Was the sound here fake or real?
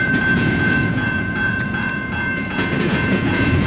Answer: fake